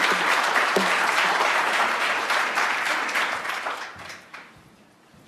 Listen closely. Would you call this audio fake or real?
fake